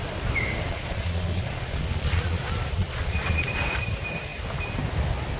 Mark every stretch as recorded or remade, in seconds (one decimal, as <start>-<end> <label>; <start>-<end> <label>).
0.0-0.7 recorded; 0.7-2.4 remade; 2.4-2.8 recorded; 2.8-3.5 remade; 3.5-5.4 recorded